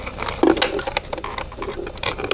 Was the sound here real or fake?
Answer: real